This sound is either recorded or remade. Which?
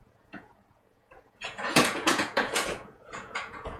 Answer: remade